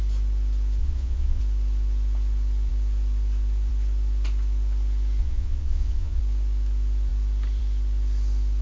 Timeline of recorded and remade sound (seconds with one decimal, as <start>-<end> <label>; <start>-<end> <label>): 0.0-0.8 recorded; 0.8-1.4 remade; 1.4-5.2 recorded; 5.2-6.2 remade; 6.2-8.6 recorded